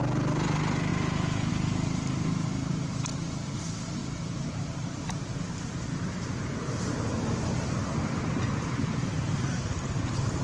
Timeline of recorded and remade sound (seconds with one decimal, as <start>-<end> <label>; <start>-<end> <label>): 0.0-4.0 recorded; 4.0-7.1 remade; 7.1-10.4 recorded